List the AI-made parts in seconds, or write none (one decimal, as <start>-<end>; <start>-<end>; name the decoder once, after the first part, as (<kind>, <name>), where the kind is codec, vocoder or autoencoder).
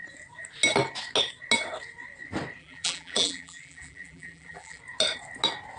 2.6-4.8 (vocoder, BigVGAN v2)